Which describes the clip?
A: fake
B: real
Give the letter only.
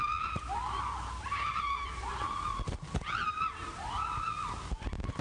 B